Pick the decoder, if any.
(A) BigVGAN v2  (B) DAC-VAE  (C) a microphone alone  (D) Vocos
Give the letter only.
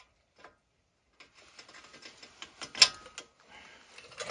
C